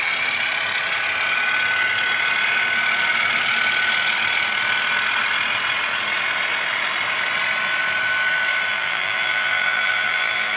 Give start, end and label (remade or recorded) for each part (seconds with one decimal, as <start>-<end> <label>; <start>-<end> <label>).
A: 0.0-8.7 recorded; 8.7-10.6 remade